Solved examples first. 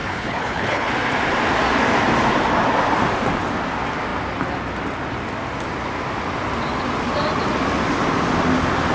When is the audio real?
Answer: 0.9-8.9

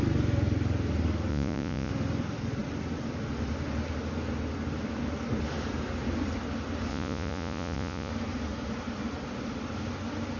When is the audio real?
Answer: 0.0-1.3; 1.9-6.9; 8.1-10.4

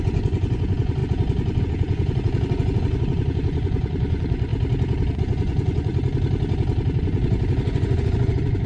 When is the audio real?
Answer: 4.5-5.1; 5.9-7.0

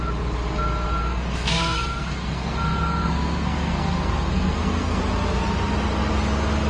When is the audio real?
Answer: 0.0-1.0; 5.0-6.7